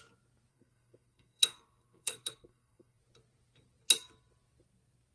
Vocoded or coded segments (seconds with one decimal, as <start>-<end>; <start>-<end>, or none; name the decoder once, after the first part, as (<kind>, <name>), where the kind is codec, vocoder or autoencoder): 0.5-3.0 (codec, SNAC)